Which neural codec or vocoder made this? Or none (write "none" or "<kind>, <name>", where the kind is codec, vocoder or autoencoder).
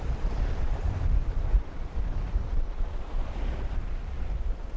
vocoder, BigVGAN v2